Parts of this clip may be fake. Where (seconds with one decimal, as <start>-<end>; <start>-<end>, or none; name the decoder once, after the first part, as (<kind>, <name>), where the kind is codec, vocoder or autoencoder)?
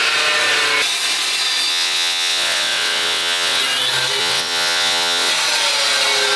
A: 1.7-3.6 (vocoder, WaveNeXt); 4.2-5.3